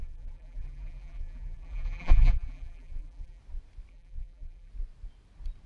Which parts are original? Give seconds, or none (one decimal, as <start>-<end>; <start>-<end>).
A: 3.4-3.9; 4.7-5.7